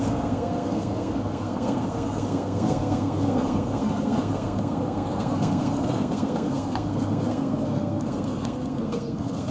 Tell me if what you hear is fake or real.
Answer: fake